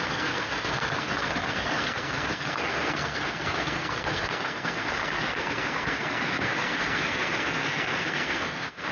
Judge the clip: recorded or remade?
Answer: remade